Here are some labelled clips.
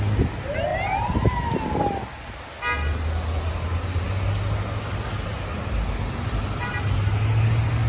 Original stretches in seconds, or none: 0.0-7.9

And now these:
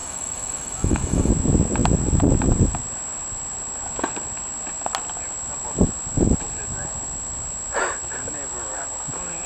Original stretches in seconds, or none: 1.3-9.5

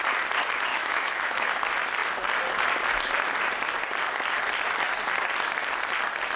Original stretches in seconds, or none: 0.0-0.7; 1.5-6.4

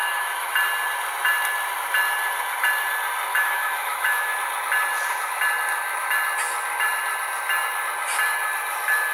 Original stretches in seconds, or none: 0.5-3.3; 4.3-9.1

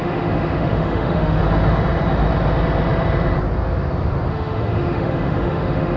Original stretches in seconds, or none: 1.4-4.3

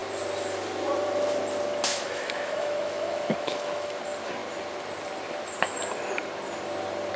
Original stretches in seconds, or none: 0.0-1.9; 4.0-7.2

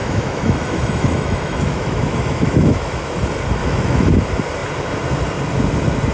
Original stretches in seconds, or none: 3.2-3.6; 4.1-6.1

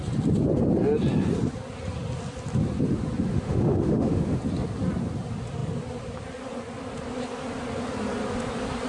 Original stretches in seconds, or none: 0.0-3.3; 4.4-8.9